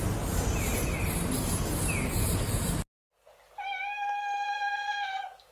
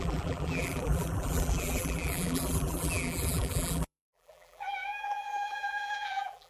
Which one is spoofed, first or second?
second